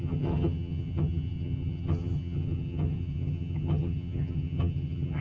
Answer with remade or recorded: remade